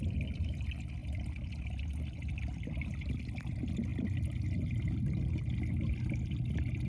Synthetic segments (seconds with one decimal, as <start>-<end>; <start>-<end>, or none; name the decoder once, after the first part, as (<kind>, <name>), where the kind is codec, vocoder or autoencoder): none